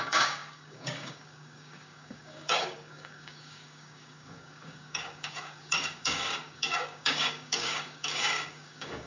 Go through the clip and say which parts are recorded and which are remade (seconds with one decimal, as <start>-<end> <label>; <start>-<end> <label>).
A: 0.0-9.1 remade